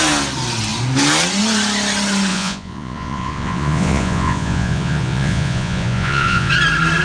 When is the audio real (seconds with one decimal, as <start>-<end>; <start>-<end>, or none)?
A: 0.0-2.3; 6.5-7.0